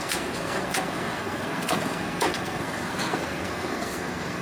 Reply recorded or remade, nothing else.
remade